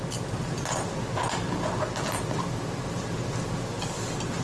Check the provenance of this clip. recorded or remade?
recorded